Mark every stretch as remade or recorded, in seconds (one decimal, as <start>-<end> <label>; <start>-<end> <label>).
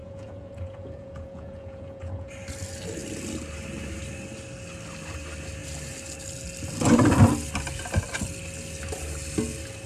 0.0-2.3 remade; 2.3-9.9 recorded